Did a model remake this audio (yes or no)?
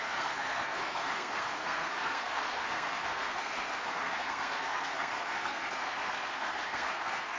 yes